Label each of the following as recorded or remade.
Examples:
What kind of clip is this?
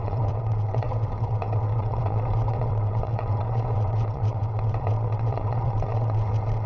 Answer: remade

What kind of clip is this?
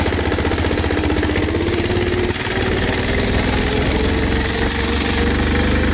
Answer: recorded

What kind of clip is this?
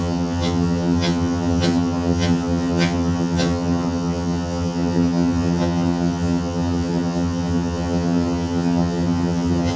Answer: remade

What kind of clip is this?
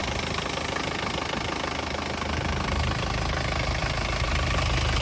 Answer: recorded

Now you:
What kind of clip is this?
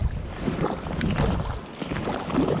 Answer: recorded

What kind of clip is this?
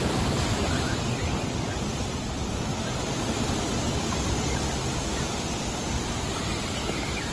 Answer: recorded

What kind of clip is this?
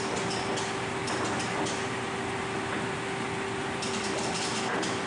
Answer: recorded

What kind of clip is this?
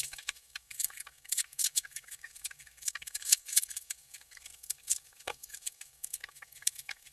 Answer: remade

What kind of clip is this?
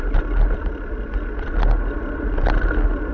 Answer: remade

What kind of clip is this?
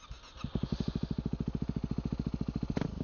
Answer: recorded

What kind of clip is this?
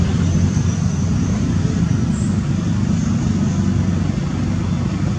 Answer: recorded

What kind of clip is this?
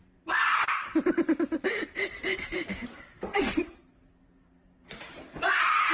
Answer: remade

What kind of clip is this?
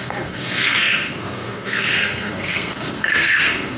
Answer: remade